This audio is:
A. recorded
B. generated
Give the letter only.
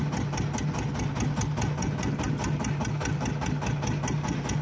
A